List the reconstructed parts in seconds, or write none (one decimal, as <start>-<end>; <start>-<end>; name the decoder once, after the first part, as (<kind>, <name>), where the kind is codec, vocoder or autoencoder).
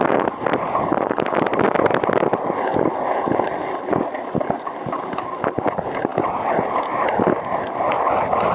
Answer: none